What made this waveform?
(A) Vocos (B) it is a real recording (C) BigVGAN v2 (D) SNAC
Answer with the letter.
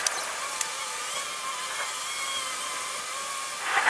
B